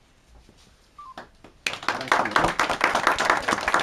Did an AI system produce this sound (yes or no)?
no